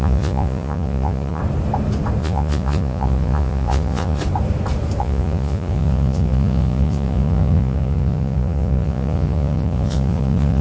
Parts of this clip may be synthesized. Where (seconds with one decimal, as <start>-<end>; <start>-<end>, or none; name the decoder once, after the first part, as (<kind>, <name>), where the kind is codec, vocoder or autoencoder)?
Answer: 0.0-1.4 (vocoder, Vocos); 2.2-4.2; 5.0-10.6

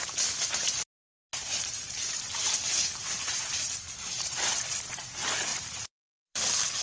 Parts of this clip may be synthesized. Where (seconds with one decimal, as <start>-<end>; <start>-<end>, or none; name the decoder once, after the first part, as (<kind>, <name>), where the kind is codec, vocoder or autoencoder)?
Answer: 1.3-4.6 (vocoder, BigVGAN v2); 5.5-6.8

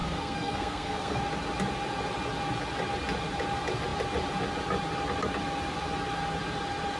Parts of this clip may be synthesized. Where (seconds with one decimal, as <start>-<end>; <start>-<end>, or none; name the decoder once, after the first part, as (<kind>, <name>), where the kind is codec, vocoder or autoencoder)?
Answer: 0.0-1.2 (codec, SNAC)

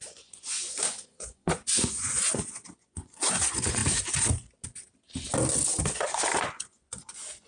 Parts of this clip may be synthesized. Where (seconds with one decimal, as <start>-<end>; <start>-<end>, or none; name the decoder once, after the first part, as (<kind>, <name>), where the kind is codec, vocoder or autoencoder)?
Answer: 0.0-3.8 (vocoder, Vocos); 6.5-7.5

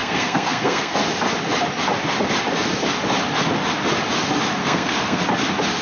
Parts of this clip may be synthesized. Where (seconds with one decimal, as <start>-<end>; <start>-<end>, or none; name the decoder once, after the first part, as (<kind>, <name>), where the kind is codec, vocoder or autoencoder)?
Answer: 0.0-1.0 (codec, SNAC); 4.6-5.2